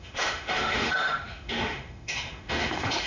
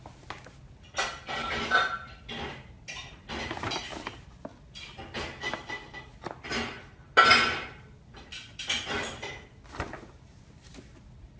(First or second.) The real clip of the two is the second